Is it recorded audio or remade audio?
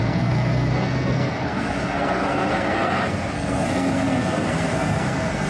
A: remade